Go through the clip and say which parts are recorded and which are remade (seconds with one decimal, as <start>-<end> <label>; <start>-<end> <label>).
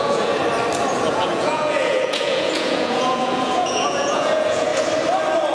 0.0-0.4 remade; 0.4-1.1 recorded; 1.1-4.7 remade; 4.7-5.5 recorded